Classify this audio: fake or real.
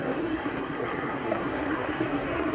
fake